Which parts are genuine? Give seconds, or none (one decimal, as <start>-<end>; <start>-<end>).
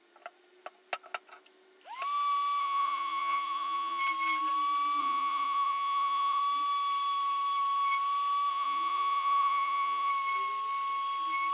0.0-2.6; 4.0-5.0; 6.4-8.5; 10.1-11.5